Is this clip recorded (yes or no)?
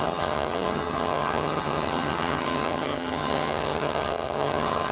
no